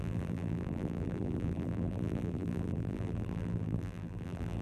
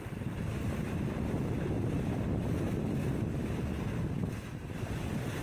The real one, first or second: second